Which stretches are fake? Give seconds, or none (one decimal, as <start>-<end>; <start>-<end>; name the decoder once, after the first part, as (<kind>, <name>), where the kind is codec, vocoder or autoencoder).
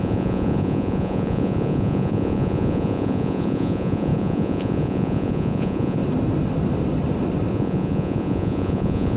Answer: 0.0-6.0 (vocoder, Vocos); 7.5-9.2